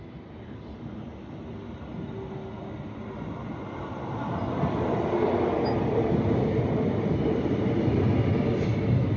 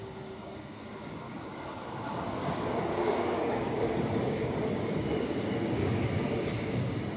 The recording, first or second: first